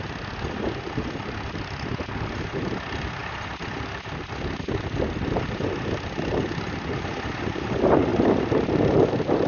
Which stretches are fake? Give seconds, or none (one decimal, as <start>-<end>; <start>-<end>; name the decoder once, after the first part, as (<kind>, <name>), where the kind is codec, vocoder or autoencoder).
none